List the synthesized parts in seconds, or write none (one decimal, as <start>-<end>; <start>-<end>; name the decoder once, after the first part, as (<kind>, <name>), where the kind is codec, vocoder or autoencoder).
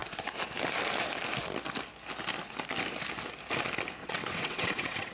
4.0-5.1 (vocoder, WaveNeXt)